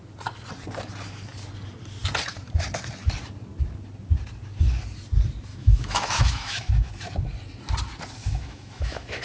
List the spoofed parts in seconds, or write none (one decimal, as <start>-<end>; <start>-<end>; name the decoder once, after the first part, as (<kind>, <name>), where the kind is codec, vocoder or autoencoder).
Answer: 5.5-6.9 (autoencoder, DAC-VAE); 8.2-9.2